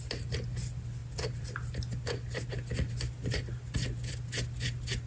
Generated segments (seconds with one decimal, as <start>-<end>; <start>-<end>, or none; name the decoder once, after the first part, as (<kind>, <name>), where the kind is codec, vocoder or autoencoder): none